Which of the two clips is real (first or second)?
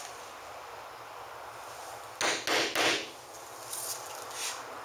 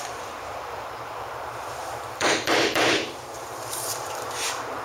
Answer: first